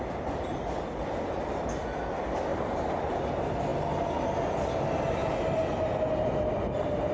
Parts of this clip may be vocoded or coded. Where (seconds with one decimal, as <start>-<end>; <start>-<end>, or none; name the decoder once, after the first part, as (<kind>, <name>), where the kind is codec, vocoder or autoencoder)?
2.5-3.2 (vocoder, BigVGAN v2)